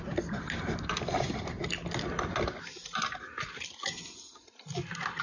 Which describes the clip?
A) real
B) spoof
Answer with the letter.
A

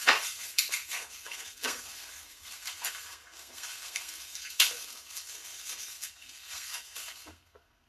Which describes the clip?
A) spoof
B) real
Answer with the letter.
A